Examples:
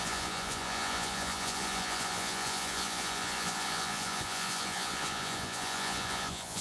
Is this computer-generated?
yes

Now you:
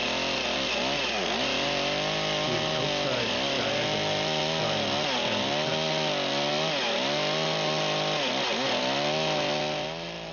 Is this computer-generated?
no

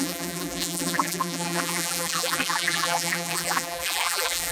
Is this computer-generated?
yes